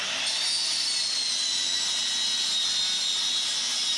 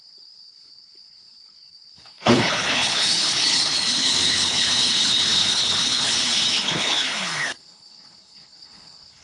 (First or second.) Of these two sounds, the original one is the first